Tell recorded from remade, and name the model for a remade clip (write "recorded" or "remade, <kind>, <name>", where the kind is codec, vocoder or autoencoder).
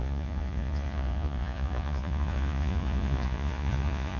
remade, vocoder, Vocos